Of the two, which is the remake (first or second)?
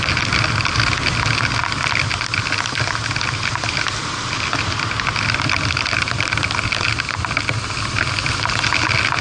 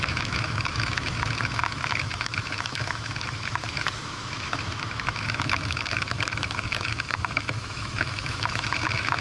second